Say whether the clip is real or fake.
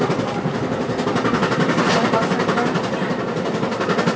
real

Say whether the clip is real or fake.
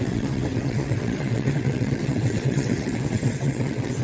fake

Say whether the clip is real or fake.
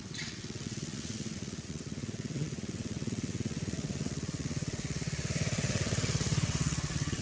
fake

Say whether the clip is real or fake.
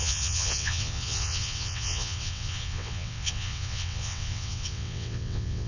fake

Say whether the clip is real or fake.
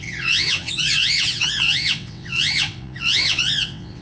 fake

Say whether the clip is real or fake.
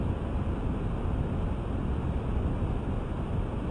real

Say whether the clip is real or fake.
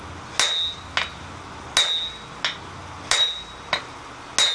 real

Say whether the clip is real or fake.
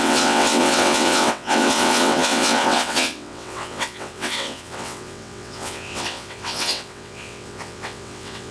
fake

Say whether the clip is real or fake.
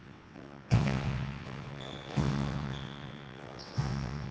fake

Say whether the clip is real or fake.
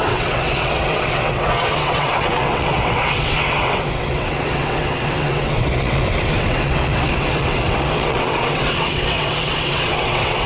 fake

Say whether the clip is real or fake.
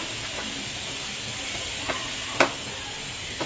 real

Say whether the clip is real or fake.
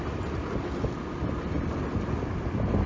real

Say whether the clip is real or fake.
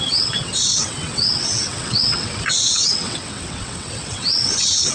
fake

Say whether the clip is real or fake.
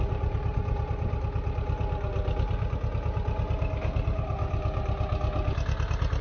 real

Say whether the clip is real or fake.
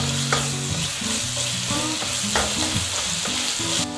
real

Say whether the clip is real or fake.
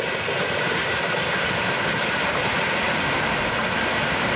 real